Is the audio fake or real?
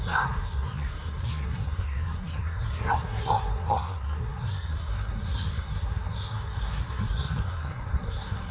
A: fake